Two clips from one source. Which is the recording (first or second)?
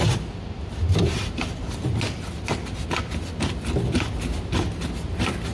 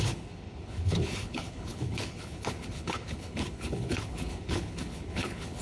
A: first